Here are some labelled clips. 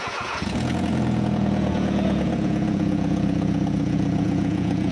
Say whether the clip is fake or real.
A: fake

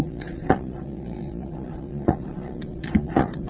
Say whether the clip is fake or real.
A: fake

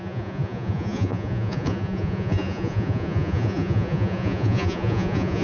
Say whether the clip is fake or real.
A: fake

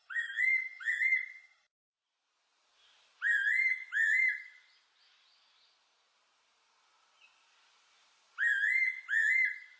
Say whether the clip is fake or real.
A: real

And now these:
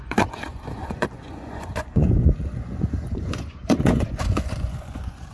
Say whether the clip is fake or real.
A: fake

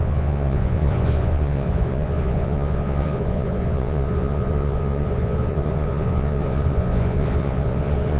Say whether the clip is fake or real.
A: fake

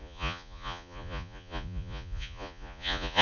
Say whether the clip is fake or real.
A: fake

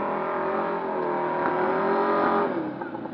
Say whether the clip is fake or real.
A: real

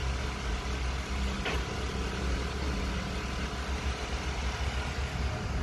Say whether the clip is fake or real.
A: real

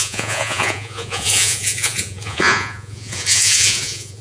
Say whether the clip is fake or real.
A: fake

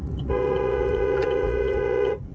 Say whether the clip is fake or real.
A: fake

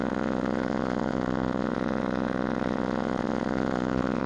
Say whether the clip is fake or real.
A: fake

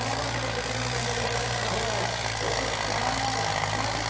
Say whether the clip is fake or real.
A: real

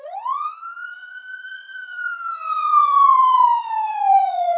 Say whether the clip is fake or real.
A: fake